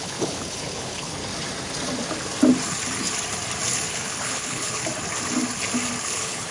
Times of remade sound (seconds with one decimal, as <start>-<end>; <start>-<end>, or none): 0.0-1.2; 3.9-4.8; 6.0-6.5